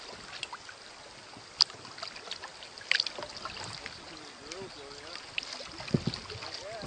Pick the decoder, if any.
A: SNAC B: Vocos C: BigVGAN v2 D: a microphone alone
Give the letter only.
D